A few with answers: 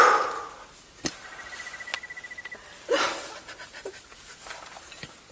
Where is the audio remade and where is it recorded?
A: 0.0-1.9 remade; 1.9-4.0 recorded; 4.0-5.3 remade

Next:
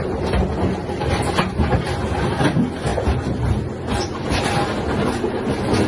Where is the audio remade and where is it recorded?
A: 0.0-0.8 recorded; 0.8-1.4 remade; 1.4-5.9 recorded

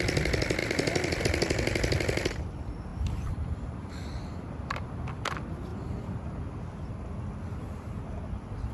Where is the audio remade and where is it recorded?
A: 0.0-0.6 recorded; 0.6-1.2 remade; 1.2-2.9 recorded; 2.9-4.9 remade; 4.9-5.7 recorded; 5.7-6.9 remade; 6.9-8.7 recorded

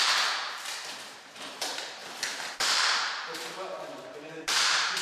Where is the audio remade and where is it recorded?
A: 0.0-5.0 remade

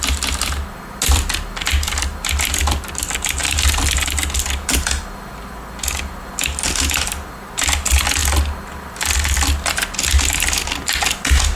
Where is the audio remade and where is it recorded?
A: 0.0-3.4 recorded; 3.4-5.0 remade; 5.0-8.2 recorded; 8.2-9.7 remade; 9.7-11.6 recorded